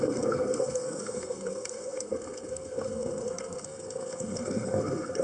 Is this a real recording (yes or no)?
no